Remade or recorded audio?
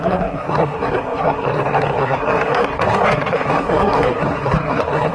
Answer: remade